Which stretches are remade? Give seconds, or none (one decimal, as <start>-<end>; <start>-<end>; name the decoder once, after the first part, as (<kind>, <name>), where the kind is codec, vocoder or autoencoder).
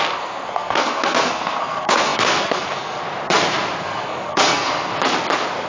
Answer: 0.0-3.0 (codec, SNAC); 3.8-4.9